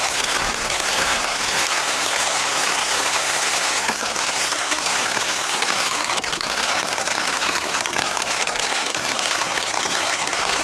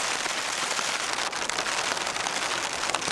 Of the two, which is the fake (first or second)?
first